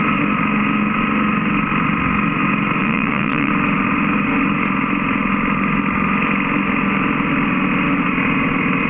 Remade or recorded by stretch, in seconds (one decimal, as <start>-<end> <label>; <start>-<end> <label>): 0.0-2.8 recorded; 2.8-3.5 remade; 3.5-8.9 recorded